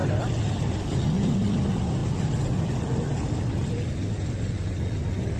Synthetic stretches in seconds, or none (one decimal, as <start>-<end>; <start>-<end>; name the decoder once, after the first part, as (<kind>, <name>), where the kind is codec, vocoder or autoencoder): 0.0-1.0 (vocoder, BigVGAN v2); 2.0-3.7